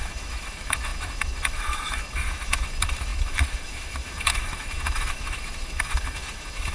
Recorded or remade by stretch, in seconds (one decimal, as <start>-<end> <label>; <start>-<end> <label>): 0.0-6.7 remade